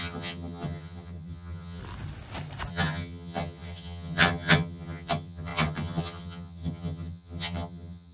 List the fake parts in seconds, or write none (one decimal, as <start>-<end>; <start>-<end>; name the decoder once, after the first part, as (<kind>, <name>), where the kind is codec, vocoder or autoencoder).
0.0-1.8 (vocoder, HiFi-GAN); 2.7-8.1